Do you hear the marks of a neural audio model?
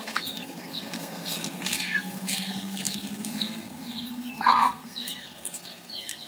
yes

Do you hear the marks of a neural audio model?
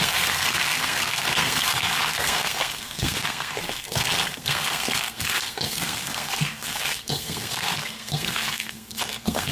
yes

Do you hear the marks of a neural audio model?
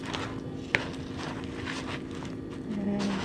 no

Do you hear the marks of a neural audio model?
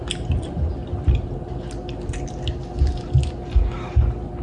no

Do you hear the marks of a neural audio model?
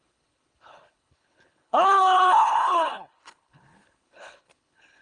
yes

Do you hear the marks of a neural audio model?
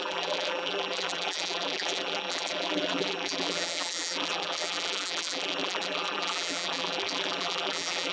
yes